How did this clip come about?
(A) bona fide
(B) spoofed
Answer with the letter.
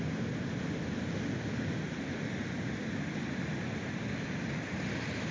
A